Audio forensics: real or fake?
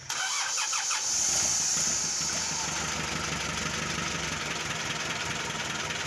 real